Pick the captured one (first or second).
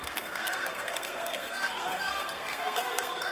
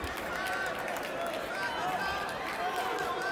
second